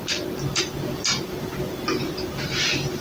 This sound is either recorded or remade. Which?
recorded